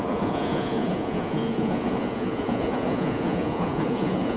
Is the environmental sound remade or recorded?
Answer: remade